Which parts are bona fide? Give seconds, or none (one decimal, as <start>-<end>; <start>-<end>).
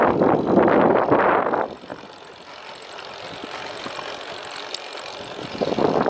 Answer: 0.0-6.1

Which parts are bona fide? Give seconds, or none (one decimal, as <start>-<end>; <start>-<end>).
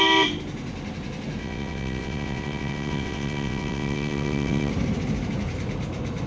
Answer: 0.0-1.4; 4.7-6.3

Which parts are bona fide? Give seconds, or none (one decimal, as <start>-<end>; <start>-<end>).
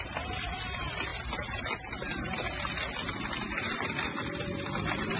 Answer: 1.1-3.2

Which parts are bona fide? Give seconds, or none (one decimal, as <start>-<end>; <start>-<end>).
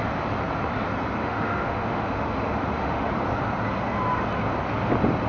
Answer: 0.0-1.2; 3.1-5.3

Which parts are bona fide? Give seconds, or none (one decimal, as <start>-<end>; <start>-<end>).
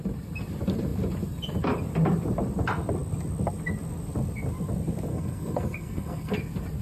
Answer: 0.0-5.1; 6.3-6.8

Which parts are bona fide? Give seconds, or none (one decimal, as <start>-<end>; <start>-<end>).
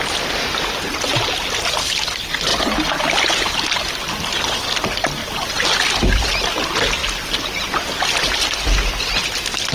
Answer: 0.0-9.7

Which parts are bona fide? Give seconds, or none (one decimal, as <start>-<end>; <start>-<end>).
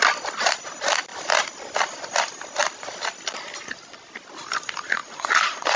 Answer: 0.0-5.0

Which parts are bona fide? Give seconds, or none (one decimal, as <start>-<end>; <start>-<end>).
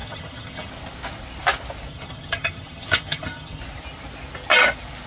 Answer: 0.7-1.9; 3.6-5.1